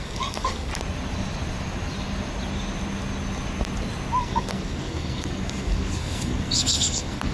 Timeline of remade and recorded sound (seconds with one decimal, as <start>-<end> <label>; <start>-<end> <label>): 0.0-0.7 remade; 0.7-4.2 recorded; 4.2-7.3 remade